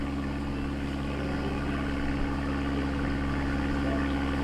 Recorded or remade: recorded